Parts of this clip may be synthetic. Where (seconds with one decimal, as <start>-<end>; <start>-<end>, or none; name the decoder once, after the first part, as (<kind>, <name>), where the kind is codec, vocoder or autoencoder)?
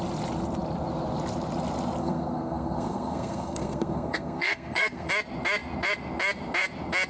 2.0-5.1 (codec, SNAC)